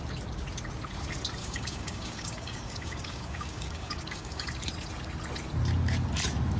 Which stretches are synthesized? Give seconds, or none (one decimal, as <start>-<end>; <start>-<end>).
1.4-4.5